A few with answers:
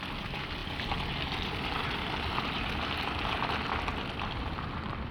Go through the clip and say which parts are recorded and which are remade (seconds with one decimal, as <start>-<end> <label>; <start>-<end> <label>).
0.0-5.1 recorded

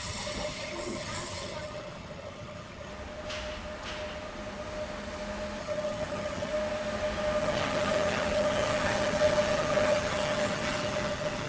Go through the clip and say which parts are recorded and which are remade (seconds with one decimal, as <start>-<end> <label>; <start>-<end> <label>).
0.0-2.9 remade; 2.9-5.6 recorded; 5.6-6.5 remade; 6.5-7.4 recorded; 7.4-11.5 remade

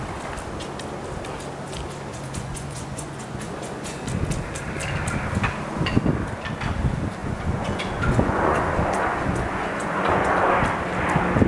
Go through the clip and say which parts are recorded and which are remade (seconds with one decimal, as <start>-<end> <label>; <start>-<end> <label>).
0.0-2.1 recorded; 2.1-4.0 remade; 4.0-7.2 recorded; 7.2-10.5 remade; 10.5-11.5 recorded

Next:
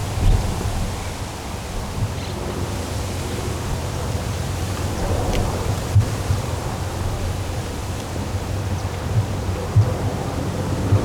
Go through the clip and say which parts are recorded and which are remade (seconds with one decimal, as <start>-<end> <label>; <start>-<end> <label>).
0.0-3.5 recorded; 3.5-11.0 remade

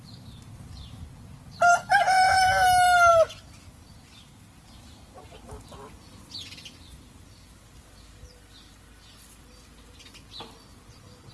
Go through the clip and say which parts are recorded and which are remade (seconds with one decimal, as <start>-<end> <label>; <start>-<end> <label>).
0.0-11.3 recorded

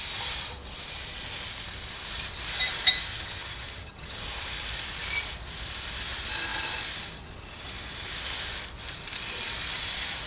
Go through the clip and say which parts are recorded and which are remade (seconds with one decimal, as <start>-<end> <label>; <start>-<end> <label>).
0.0-3.1 recorded; 3.1-4.2 remade; 4.2-10.3 recorded

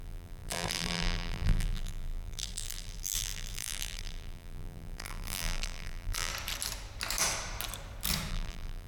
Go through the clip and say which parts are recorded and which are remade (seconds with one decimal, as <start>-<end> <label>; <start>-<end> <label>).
0.0-6.3 remade; 6.3-8.3 recorded; 8.3-8.9 remade

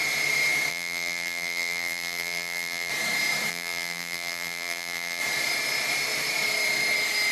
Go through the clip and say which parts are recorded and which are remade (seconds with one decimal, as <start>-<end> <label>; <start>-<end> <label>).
0.0-0.7 recorded; 0.7-2.9 remade; 2.9-3.5 recorded; 3.5-5.2 remade; 5.2-7.3 recorded